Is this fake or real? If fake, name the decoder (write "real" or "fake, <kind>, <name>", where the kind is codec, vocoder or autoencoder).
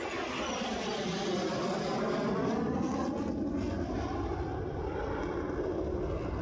real